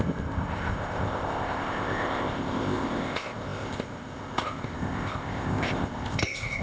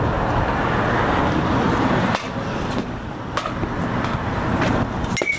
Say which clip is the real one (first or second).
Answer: second